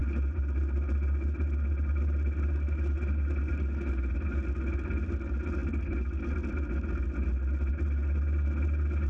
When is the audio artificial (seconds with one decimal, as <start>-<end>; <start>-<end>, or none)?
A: none